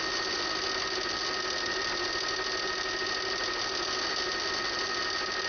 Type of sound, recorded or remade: recorded